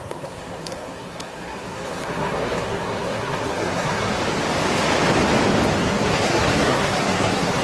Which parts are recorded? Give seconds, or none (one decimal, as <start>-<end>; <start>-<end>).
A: 4.2-5.8